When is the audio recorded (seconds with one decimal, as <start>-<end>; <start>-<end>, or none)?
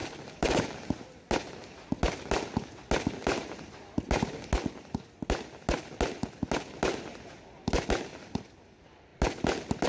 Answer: 0.7-9.9